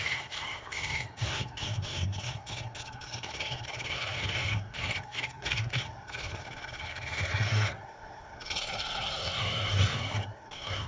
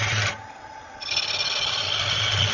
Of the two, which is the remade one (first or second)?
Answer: first